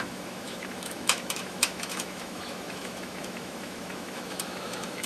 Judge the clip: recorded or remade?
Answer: remade